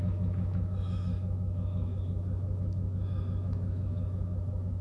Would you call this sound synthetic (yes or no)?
yes